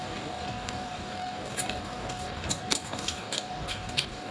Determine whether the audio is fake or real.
fake